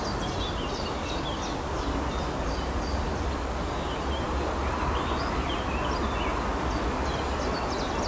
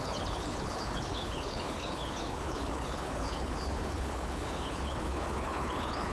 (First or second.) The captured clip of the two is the first